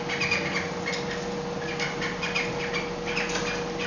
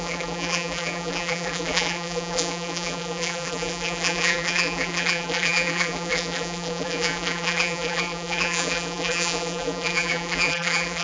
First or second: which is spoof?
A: second